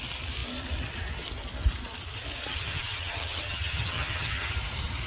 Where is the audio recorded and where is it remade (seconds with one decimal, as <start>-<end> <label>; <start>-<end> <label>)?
0.0-2.5 recorded; 2.5-4.5 remade; 4.5-5.1 recorded

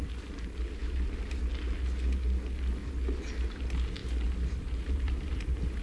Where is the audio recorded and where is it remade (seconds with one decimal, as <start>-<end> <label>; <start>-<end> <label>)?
0.0-0.8 recorded; 0.8-1.4 remade; 1.4-4.0 recorded; 4.0-5.8 remade

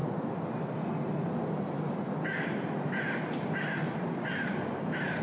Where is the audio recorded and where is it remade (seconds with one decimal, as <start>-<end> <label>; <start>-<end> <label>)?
0.0-2.9 recorded; 2.9-5.2 remade

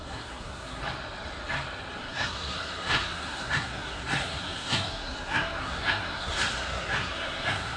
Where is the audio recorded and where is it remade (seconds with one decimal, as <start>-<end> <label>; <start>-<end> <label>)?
0.0-0.8 remade; 0.8-2.0 recorded; 2.0-7.8 remade

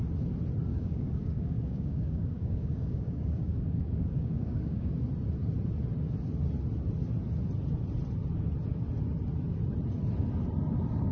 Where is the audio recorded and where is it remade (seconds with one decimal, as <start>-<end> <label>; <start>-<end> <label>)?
0.0-0.7 recorded; 0.7-4.9 remade; 4.9-11.1 recorded

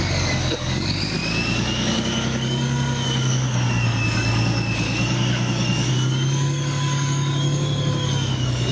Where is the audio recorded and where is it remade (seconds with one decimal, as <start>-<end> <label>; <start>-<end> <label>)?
0.0-8.7 remade